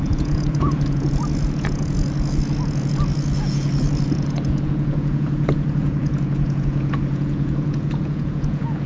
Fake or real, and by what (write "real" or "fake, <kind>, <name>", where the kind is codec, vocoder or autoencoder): fake, vocoder, Vocos